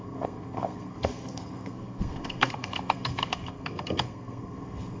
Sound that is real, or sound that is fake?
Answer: fake